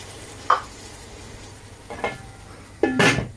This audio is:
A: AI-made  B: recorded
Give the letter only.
B